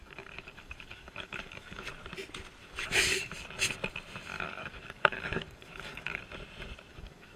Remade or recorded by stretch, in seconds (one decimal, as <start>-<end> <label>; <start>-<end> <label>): 0.0-1.9 remade; 1.9-2.6 recorded; 2.6-3.3 remade; 3.3-4.3 recorded; 4.3-6.2 remade; 6.2-6.9 recorded; 6.9-7.4 remade